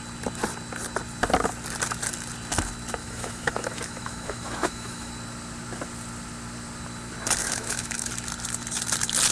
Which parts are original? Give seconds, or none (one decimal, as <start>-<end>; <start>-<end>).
0.0-3.0; 5.1-7.4; 8.1-9.3

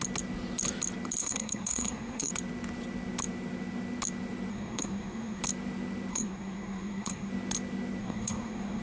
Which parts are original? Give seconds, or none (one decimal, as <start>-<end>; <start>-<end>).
0.0-1.2; 2.3-4.5; 5.4-6.1; 7.3-8.0

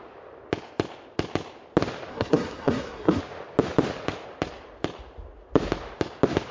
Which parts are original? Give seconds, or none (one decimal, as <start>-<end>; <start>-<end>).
0.0-2.1; 3.2-6.5

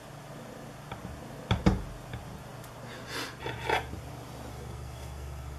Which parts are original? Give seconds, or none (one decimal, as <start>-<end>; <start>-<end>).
0.0-4.5